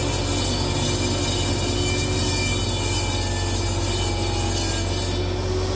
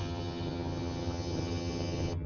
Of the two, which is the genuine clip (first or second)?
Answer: first